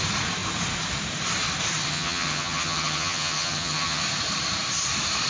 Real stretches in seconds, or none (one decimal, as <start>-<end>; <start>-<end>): 0.0-1.9; 4.0-5.3